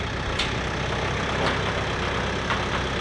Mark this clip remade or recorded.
recorded